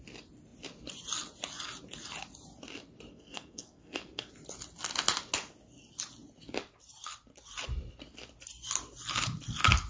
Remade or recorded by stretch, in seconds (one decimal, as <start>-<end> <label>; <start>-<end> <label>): 0.0-3.1 recorded; 3.1-4.3 remade; 4.3-9.9 recorded